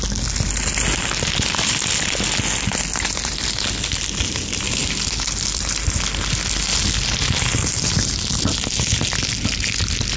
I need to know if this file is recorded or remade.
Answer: recorded